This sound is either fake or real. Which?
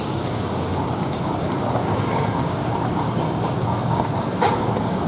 fake